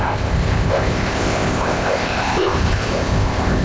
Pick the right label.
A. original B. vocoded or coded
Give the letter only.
B